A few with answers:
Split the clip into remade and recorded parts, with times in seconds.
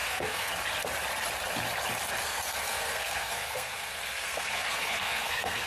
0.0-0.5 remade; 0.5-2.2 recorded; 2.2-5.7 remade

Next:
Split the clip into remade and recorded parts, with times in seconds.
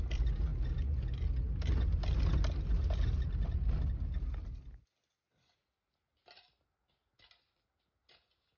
0.0-8.6 recorded